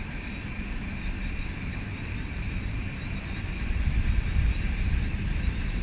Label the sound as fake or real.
fake